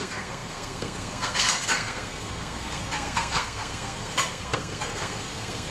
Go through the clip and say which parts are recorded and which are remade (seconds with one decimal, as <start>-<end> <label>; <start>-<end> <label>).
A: 0.0-5.7 remade